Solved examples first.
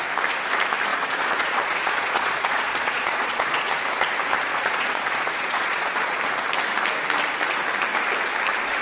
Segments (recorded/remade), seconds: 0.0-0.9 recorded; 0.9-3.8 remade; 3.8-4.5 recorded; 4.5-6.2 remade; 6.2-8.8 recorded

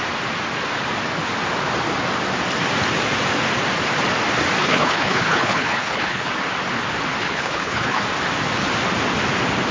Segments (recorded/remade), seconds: 0.0-4.6 recorded; 4.6-6.3 remade; 6.3-7.2 recorded; 7.2-8.0 remade; 8.0-9.7 recorded

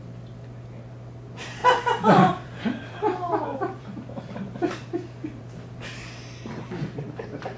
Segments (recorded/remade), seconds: 0.0-1.6 recorded; 1.6-5.8 remade; 5.8-7.6 recorded

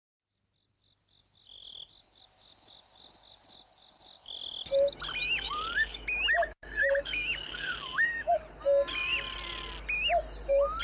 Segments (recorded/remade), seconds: 0.0-5.2 recorded; 5.2-8.3 remade; 8.3-10.8 recorded

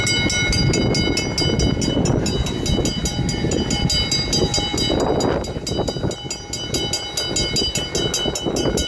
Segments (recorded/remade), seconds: 0.0-8.9 recorded

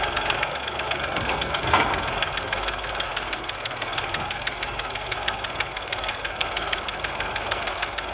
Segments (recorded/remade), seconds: 0.0-8.1 remade

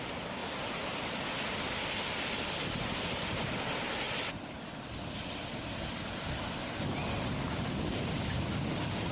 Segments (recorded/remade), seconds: 0.0-9.1 recorded

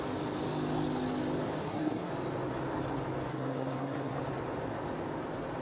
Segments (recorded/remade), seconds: 0.0-1.6 recorded; 1.6-2.1 remade; 2.1-3.3 recorded; 3.3-4.2 remade; 4.2-5.6 recorded